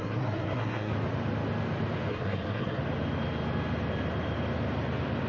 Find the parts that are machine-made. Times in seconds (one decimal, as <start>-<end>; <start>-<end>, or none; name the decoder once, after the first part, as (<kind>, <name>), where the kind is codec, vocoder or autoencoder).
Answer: 0.0-0.9 (codec, SNAC); 2.1-2.8